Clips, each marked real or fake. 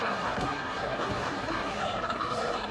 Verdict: fake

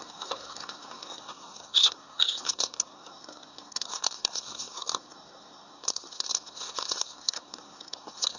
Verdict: fake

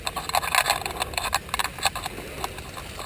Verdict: real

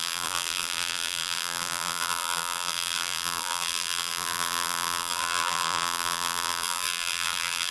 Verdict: fake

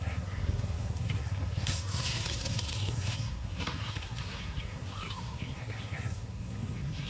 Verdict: fake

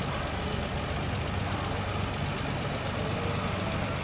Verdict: real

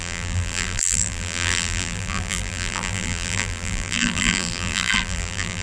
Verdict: fake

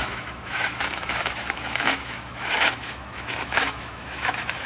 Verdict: fake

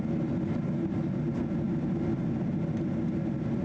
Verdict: real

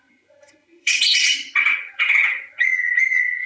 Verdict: fake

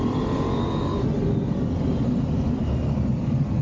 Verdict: fake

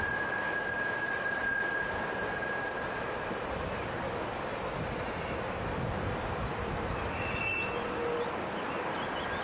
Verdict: real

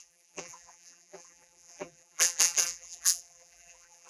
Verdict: fake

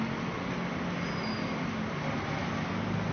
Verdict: real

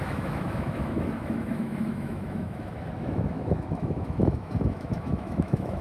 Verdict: fake